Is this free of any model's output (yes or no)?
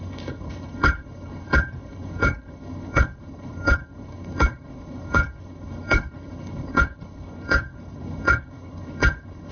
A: no